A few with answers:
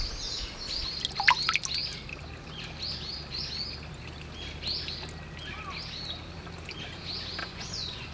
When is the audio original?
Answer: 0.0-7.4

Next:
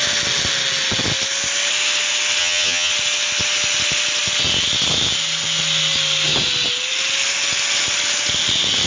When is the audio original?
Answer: 0.0-2.4; 2.9-8.9